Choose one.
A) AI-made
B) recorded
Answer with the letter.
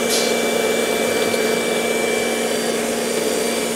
B